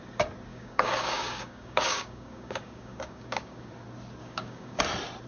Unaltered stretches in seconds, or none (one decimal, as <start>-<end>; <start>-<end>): 0.0-0.5; 3.7-4.2; 4.8-5.3